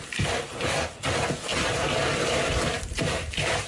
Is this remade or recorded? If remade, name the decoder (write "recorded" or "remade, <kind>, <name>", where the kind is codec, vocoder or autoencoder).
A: recorded